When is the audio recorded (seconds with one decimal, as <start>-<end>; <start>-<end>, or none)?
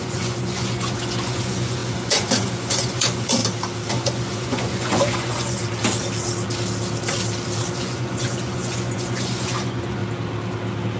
3.4-3.9; 5.6-7.7; 10.0-11.0